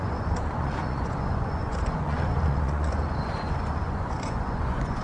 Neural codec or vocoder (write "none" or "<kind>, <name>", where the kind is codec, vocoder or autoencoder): vocoder, Vocos